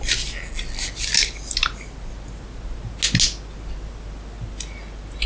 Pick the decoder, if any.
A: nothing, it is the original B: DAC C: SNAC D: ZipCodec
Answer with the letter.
A